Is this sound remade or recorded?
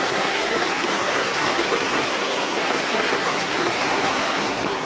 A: remade